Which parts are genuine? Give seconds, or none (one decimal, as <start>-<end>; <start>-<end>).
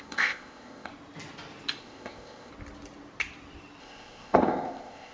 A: 0.9-1.8; 2.5-3.8